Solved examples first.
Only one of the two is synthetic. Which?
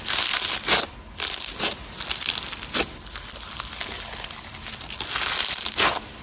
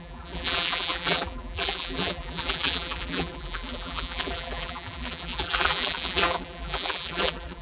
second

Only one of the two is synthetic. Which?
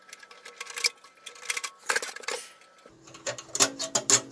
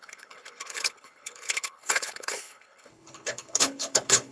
second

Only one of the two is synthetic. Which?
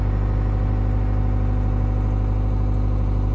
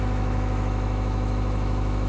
second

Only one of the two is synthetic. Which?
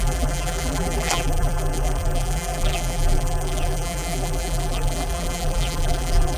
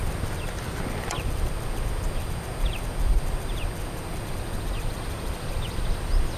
first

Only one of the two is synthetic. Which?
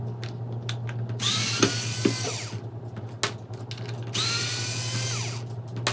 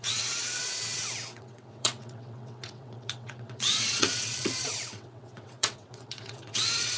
second